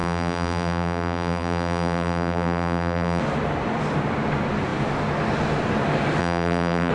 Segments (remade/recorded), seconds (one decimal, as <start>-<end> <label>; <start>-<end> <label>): 0.0-3.2 remade; 3.2-6.2 recorded; 6.2-6.9 remade